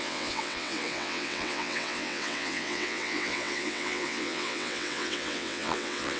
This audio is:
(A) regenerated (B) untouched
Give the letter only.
A